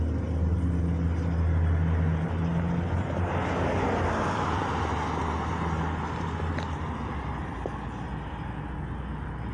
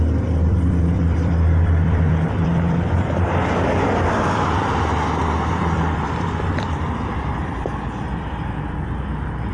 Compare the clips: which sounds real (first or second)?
first